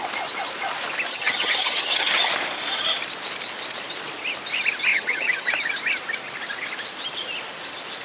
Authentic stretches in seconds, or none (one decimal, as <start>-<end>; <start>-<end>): 0.0-1.1; 2.3-4.9; 5.5-8.0